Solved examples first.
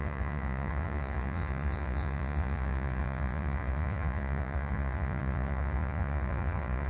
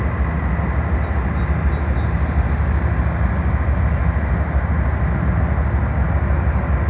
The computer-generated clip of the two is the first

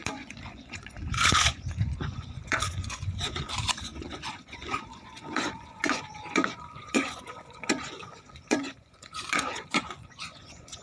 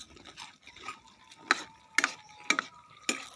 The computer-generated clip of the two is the first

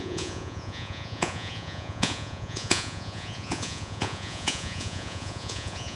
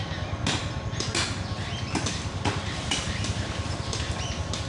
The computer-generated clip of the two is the first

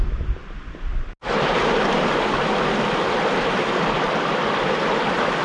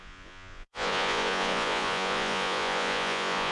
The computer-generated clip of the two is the second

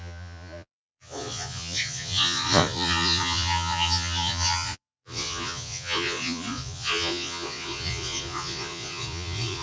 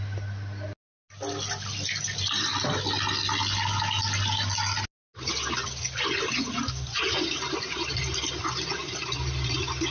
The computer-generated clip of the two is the first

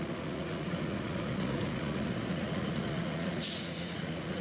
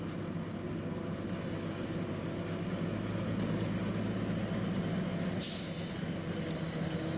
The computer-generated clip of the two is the first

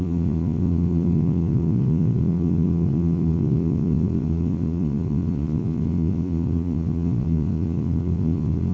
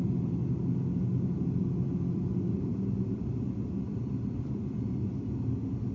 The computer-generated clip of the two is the first